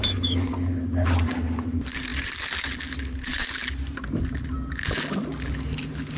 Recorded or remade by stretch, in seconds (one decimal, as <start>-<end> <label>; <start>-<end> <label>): 0.0-0.5 remade; 0.5-6.2 recorded